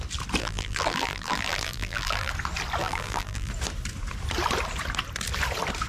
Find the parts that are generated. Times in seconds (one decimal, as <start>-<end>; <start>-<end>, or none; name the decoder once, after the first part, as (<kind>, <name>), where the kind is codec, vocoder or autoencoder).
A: 0.4-2.3 (vocoder, BigVGAN v2); 2.8-3.5